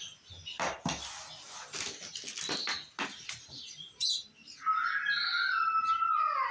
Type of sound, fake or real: real